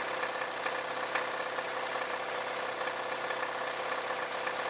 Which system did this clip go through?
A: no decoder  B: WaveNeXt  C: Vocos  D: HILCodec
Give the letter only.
A